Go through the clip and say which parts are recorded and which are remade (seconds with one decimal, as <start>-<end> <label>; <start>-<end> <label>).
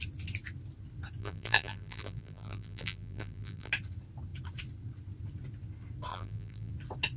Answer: 0.0-1.2 recorded; 1.2-3.7 remade; 3.7-6.1 recorded; 6.1-6.7 remade; 6.7-7.2 recorded